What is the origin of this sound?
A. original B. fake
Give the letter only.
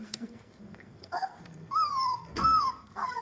B